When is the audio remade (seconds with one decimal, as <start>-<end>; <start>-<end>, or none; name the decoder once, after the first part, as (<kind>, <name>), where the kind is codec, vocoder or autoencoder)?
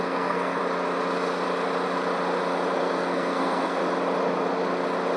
0.0-0.6 (codec, SNAC); 2.8-3.8